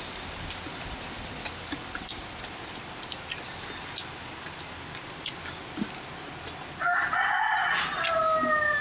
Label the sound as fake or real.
real